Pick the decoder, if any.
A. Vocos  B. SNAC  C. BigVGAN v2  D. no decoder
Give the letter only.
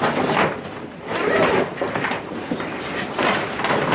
D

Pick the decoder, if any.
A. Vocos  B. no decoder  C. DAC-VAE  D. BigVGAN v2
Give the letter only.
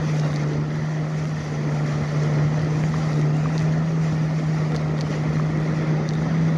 B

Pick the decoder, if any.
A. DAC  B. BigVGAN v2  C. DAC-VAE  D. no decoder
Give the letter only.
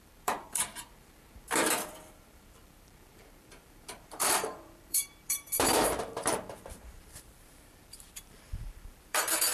B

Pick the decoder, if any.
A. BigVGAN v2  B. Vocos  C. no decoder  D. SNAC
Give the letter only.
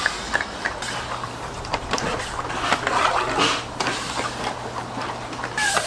C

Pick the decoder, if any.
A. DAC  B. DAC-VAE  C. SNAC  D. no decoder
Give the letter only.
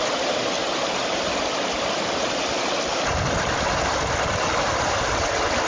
D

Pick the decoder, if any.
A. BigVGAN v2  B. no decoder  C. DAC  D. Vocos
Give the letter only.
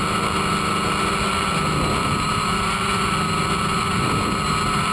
B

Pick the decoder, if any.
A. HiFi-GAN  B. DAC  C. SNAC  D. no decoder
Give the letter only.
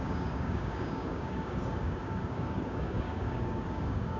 B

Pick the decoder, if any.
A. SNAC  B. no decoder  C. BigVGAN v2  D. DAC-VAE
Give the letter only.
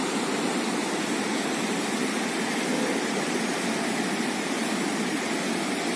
C